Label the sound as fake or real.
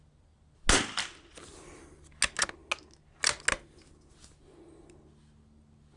real